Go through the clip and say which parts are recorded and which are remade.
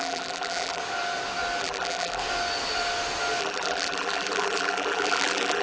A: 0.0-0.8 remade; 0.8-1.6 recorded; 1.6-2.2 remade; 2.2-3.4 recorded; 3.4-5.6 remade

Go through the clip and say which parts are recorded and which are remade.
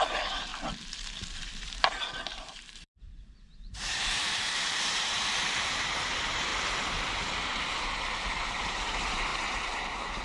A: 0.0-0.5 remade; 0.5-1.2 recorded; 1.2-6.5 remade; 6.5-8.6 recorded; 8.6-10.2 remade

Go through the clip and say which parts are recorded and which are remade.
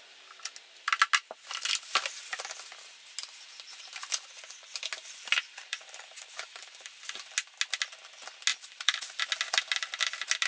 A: 0.0-5.6 recorded; 5.6-6.9 remade; 6.9-8.5 recorded; 8.5-9.2 remade; 9.2-10.5 recorded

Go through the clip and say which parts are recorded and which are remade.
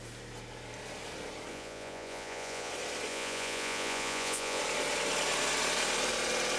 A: 0.0-1.5 recorded; 1.5-2.7 remade; 2.7-3.1 recorded; 3.1-4.6 remade; 4.6-6.6 recorded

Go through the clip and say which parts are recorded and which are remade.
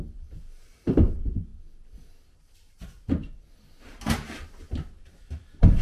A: 0.0-1.5 remade; 1.5-3.8 recorded; 3.8-4.4 remade; 4.4-5.0 recorded; 5.0-5.8 remade